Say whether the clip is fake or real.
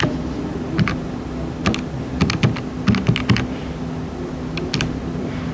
real